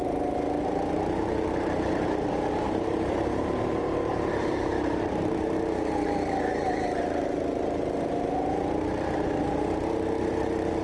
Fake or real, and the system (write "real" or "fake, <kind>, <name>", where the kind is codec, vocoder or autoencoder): fake, vocoder, BigVGAN v2